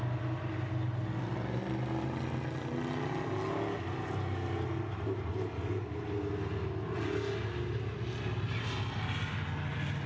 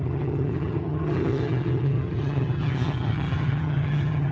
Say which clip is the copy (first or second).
second